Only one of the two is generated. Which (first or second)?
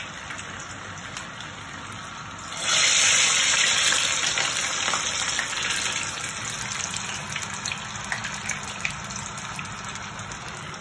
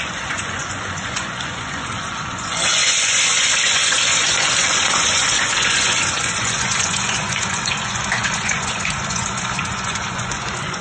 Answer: second